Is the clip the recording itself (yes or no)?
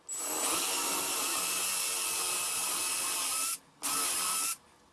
yes